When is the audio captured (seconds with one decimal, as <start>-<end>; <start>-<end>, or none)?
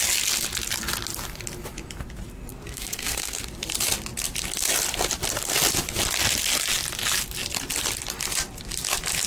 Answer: 0.0-2.5; 3.4-9.3